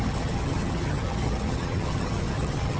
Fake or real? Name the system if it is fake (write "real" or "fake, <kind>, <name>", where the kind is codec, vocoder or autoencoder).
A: fake, vocoder, HiFi-GAN